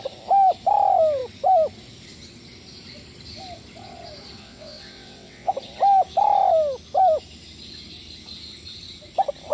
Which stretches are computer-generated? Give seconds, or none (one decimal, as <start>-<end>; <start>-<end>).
4.4-5.5